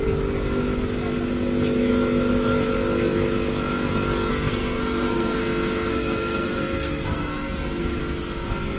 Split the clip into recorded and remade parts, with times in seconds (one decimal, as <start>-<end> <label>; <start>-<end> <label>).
0.0-4.3 recorded; 4.3-5.4 remade; 5.4-5.9 recorded; 5.9-8.0 remade; 8.0-8.8 recorded